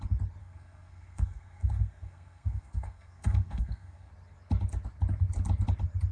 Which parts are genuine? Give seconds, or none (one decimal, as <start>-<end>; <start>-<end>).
0.0-0.4; 4.1-6.1